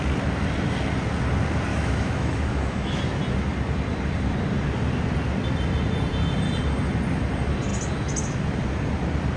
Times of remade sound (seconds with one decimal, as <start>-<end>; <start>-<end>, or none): 1.7-3.0